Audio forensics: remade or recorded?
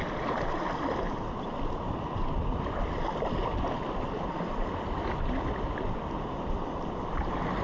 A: recorded